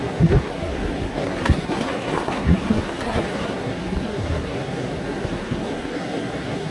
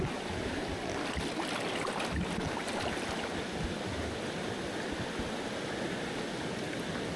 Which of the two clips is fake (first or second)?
first